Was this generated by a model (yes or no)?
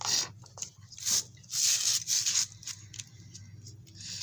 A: no